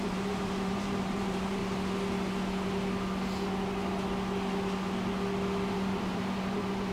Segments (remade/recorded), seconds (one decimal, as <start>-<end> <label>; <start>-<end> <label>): 0.0-1.6 remade; 1.6-5.7 recorded; 5.7-6.9 remade